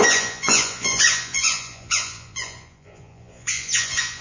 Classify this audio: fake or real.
fake